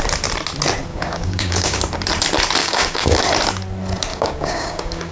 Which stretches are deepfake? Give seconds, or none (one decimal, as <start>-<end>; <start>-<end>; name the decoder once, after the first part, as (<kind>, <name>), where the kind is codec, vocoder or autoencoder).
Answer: 0.9-1.8 (codec, DAC); 2.6-3.2; 4.1-5.1